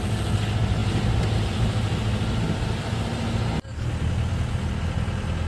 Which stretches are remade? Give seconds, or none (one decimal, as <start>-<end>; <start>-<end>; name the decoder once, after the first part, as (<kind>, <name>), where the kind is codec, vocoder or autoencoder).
none